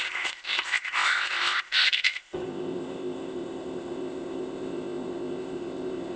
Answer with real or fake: fake